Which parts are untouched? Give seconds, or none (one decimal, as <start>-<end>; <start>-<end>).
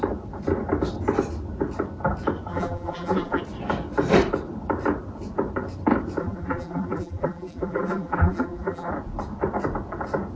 0.0-2.5; 3.4-6.2; 8.9-10.4